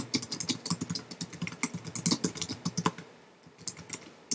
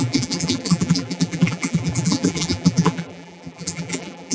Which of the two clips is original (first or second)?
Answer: first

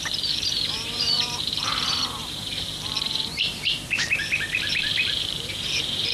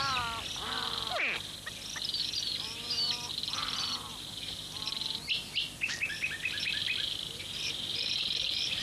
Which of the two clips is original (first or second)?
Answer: second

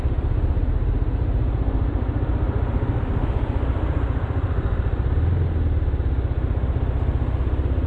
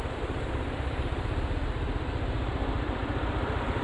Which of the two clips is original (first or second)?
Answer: first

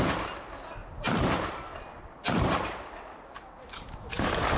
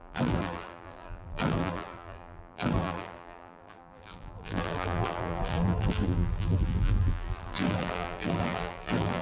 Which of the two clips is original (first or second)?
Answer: first